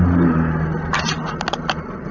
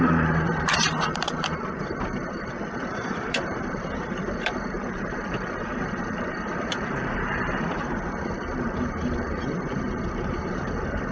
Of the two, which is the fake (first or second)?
second